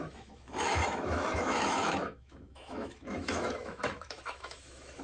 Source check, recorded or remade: remade